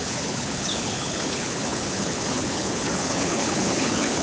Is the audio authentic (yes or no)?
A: no